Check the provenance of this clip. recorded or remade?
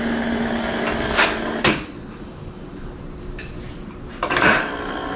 recorded